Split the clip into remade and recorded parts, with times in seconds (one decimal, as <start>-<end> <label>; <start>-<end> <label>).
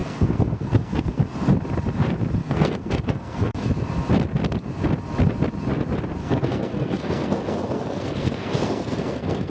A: 0.0-1.2 remade; 1.2-2.4 recorded; 2.4-3.7 remade; 3.7-6.2 recorded; 6.2-9.5 remade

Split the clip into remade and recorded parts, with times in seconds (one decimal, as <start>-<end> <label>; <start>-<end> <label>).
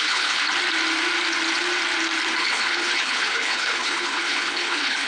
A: 0.0-0.5 remade; 0.5-2.4 recorded; 2.4-5.1 remade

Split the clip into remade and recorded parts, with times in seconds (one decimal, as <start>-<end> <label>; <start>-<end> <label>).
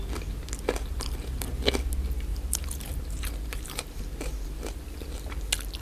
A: 0.0-0.9 recorded; 0.9-1.5 remade; 1.5-2.3 recorded; 2.3-4.8 remade; 4.8-5.8 recorded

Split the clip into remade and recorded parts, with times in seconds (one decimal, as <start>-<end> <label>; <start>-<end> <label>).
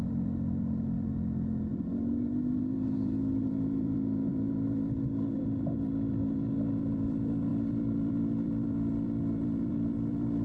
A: 0.0-10.4 remade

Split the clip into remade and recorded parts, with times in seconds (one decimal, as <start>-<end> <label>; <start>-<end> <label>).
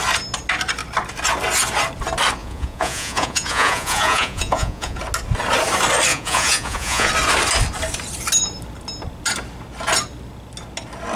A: 0.0-2.4 recorded; 2.4-5.0 remade; 5.0-6.1 recorded; 6.1-7.1 remade; 7.1-11.2 recorded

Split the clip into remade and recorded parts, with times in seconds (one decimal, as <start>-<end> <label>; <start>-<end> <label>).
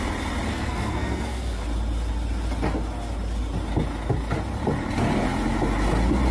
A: 0.0-0.5 recorded; 0.5-1.6 remade; 1.6-6.3 recorded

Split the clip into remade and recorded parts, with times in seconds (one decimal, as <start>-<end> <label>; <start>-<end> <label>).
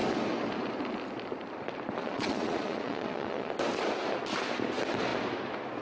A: 0.0-2.0 recorded; 2.0-3.5 remade; 3.5-5.8 recorded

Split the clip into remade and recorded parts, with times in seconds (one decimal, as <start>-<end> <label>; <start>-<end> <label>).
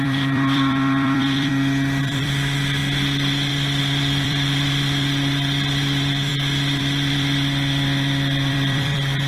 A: 0.0-1.5 remade; 1.5-2.0 recorded; 2.0-2.8 remade; 2.8-3.5 recorded; 3.5-6.3 remade; 6.3-6.8 recorded; 6.8-9.3 remade